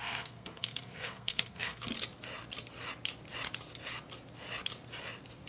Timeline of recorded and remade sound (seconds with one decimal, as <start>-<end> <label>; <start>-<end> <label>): 0.0-1.9 remade; 1.9-5.5 recorded